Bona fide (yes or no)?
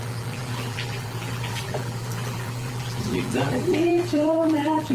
no